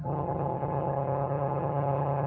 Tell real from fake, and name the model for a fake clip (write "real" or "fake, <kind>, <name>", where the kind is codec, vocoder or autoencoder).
fake, vocoder, HiFi-GAN